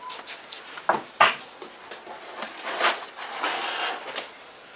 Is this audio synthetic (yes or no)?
no